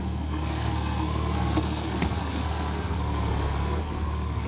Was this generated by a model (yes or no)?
yes